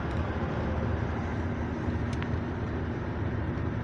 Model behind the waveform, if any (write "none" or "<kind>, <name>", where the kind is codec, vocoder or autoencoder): none